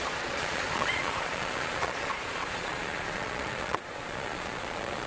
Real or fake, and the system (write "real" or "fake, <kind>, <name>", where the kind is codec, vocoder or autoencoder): fake, vocoder, Vocos